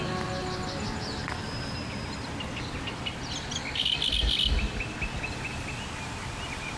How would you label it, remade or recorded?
recorded